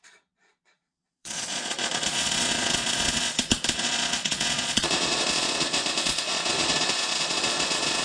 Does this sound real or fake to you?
fake